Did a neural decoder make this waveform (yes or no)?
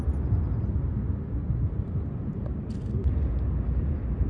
no